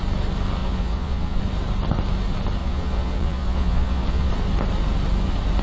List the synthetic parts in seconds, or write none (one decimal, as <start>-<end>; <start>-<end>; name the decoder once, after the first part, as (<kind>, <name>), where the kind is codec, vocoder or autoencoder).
0.6-1.4 (vocoder, Vocos); 2.6-4.3